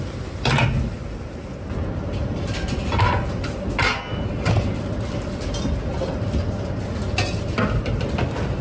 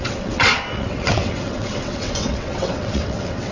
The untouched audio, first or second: first